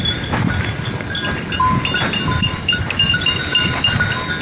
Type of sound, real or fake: real